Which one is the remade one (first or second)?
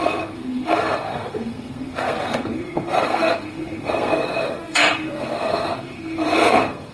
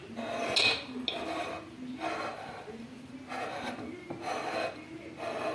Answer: first